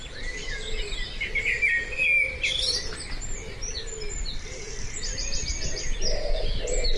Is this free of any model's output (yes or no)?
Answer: yes